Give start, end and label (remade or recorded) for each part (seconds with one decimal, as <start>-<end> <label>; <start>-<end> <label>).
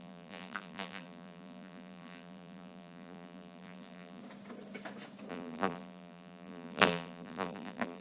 0.0-4.2 remade; 4.2-5.3 recorded; 5.3-8.0 remade